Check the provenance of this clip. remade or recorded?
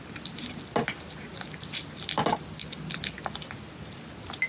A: recorded